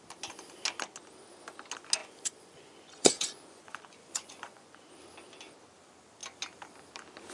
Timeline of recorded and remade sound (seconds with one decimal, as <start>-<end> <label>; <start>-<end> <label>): 0.0-2.0 recorded; 2.0-4.9 remade; 4.9-7.3 recorded